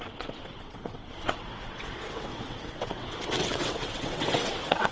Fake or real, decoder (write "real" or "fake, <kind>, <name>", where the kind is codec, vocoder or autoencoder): fake, vocoder, WaveNeXt